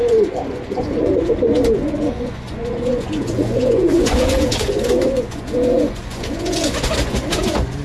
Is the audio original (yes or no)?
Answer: no